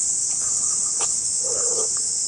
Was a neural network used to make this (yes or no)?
yes